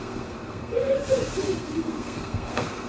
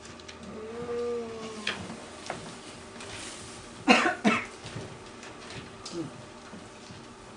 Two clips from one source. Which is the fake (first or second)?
first